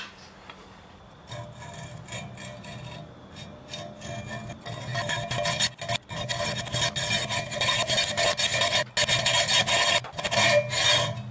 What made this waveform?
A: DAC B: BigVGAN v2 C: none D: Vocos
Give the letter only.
C